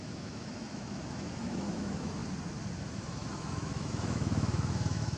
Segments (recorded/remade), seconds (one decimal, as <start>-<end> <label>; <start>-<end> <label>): 0.0-2.2 remade; 2.2-2.8 recorded; 2.8-5.2 remade